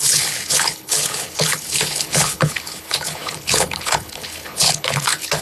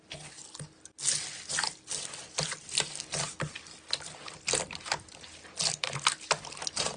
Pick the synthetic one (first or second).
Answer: first